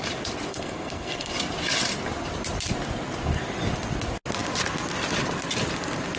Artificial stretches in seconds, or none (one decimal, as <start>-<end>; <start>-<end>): 0.5-1.3